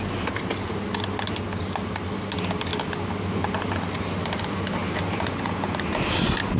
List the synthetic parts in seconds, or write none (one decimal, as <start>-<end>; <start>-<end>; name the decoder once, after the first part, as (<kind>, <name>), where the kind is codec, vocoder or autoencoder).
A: none